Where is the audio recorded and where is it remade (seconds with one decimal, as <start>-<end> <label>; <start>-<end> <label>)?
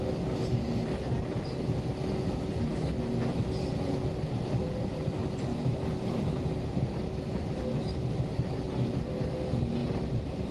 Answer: 0.0-5.5 recorded; 5.5-7.6 remade; 7.6-9.8 recorded; 9.8-10.5 remade